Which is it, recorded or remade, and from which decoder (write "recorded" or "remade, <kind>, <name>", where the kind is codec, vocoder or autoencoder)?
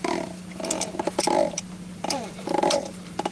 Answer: remade, vocoder, BigVGAN v2